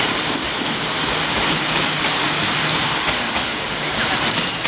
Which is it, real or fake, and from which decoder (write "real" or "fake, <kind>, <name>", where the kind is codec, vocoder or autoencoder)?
real